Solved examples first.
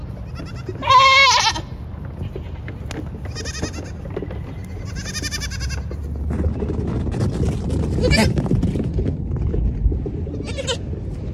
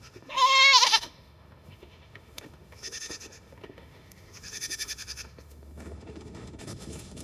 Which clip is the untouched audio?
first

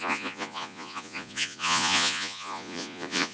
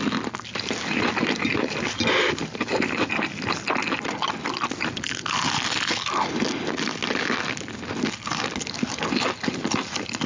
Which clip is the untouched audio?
second